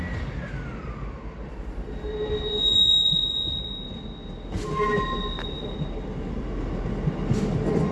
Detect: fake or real real